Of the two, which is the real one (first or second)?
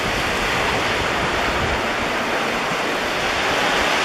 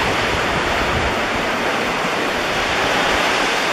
first